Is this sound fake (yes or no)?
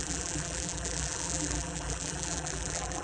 yes